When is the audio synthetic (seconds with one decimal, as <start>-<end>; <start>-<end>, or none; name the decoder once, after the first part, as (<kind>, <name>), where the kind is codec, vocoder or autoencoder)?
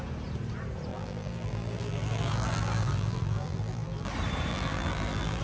0.9-4.1 (vocoder, BigVGAN v2); 4.5-5.4